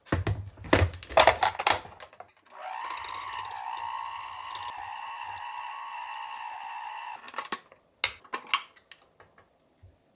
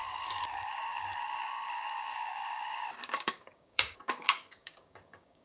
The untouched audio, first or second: first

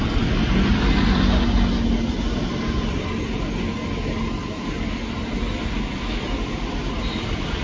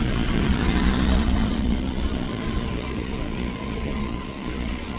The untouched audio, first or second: first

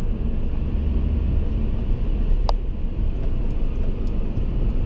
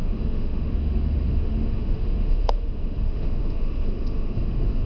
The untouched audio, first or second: first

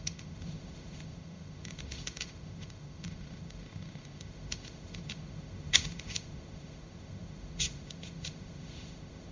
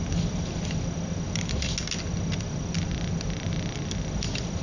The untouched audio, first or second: second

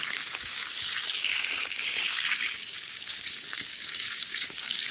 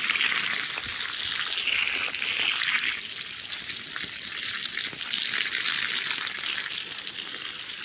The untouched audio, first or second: second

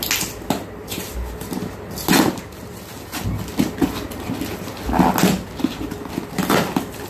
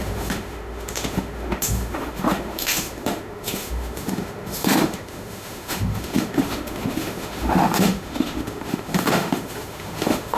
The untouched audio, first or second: first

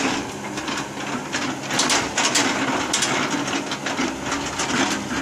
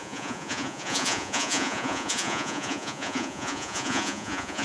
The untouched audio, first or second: first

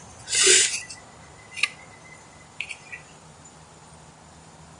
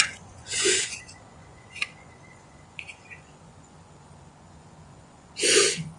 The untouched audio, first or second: first